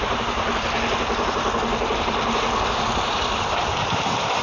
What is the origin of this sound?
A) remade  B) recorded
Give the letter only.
B